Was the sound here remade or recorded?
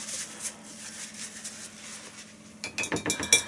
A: recorded